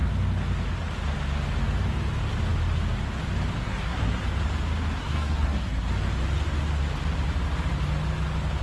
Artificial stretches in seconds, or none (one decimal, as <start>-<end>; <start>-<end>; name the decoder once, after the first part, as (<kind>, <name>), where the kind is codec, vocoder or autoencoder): 3.6-4.2 (codec, SNAC); 5.0-5.9